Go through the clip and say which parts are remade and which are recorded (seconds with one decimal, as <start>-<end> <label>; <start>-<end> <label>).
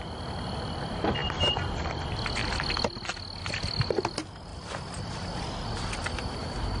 0.0-6.8 recorded